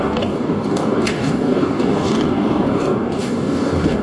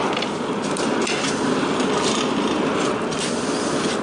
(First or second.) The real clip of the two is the second